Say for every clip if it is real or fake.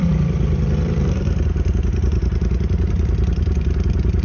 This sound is fake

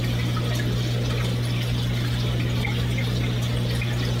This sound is real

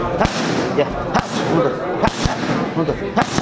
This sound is real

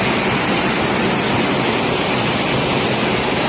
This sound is fake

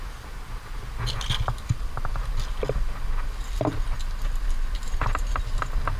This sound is real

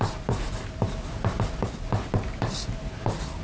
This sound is fake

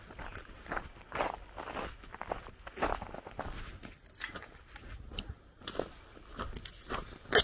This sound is real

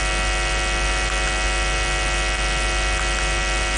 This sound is real